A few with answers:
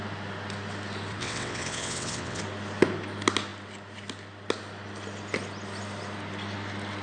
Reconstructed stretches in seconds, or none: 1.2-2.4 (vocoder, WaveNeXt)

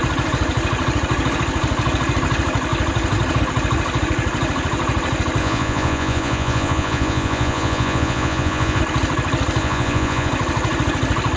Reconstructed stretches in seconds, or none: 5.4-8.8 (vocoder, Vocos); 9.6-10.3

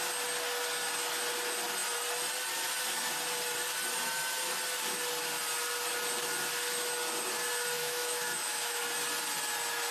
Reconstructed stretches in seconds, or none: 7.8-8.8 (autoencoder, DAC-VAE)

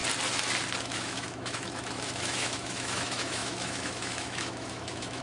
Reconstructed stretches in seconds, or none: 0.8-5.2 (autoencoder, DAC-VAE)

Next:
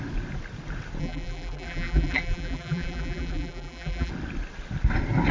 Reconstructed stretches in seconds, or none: 1.0-4.1 (vocoder, BigVGAN v2)

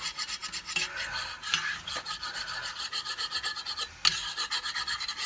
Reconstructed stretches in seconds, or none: none